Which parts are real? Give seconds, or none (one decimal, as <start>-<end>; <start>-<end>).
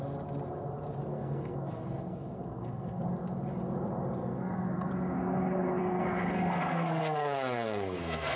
0.0-1.1; 3.0-4.2; 4.9-5.8